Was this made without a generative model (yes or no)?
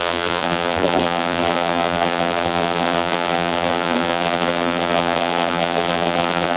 no